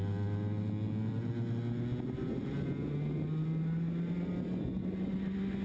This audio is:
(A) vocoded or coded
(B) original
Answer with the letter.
B